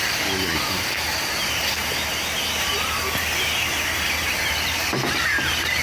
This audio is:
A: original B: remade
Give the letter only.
A